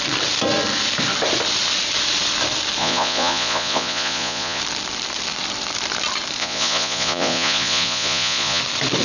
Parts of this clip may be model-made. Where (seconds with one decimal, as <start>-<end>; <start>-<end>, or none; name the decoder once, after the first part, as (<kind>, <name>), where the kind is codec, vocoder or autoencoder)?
2.8-4.6 (vocoder, Vocos); 6.4-8.6